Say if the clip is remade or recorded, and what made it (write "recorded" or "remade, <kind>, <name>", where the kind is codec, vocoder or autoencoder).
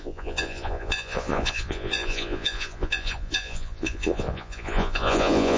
remade, vocoder, Vocos